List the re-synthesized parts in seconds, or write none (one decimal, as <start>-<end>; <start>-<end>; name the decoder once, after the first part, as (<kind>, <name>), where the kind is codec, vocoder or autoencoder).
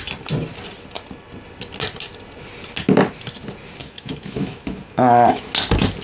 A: 3.8-5.5 (autoencoder, DAC-VAE)